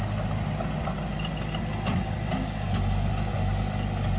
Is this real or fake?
real